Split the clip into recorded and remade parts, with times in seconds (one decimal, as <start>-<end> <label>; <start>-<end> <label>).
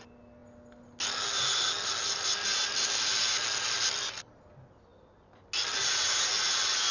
0.0-6.9 recorded